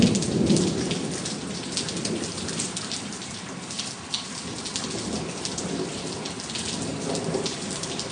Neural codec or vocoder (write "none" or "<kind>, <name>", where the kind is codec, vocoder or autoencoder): vocoder, BigVGAN v2